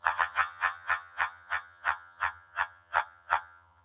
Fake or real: fake